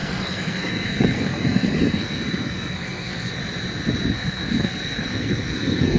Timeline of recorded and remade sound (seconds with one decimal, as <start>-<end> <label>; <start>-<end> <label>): 0.0-3.4 remade; 3.4-4.1 recorded; 4.1-6.0 remade